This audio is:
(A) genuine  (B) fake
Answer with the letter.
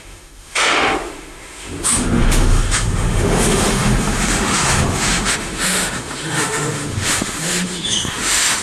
B